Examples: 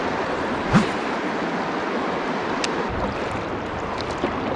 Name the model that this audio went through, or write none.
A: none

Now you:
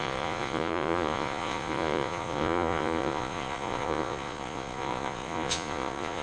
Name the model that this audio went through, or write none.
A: vocoder, Vocos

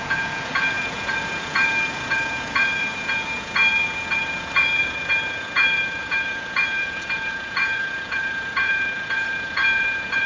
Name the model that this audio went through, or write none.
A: vocoder, Vocos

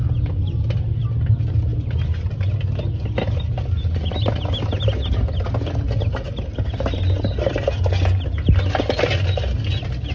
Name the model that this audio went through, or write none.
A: none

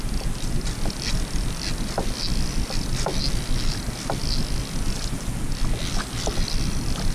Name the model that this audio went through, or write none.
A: none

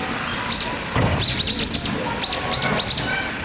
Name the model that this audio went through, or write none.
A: none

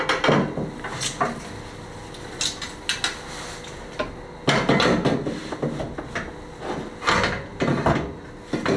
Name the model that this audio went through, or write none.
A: none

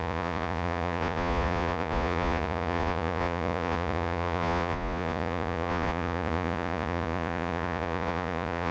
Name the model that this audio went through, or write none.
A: vocoder, Vocos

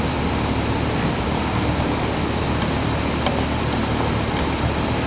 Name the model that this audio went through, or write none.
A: none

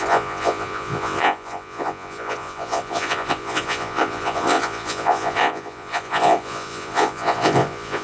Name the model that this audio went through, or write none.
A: vocoder, Vocos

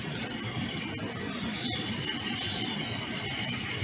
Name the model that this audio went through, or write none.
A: none